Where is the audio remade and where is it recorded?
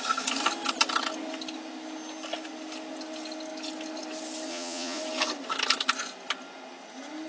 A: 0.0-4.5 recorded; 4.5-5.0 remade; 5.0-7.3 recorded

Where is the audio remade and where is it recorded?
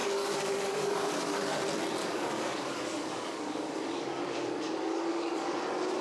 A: 0.0-1.6 remade; 1.6-2.0 recorded; 2.0-5.6 remade; 5.6-6.0 recorded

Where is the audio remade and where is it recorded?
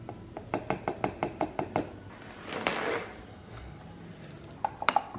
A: 0.0-3.3 recorded; 3.3-3.8 remade; 3.8-5.2 recorded